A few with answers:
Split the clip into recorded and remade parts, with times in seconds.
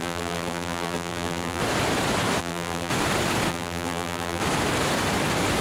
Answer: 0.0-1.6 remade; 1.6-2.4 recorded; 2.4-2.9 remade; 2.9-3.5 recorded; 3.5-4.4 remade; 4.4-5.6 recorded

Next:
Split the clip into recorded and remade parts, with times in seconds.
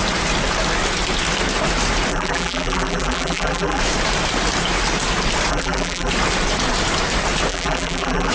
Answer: 0.0-2.1 recorded; 2.1-3.8 remade; 3.8-5.5 recorded; 5.5-6.1 remade; 6.1-7.5 recorded; 7.5-8.3 remade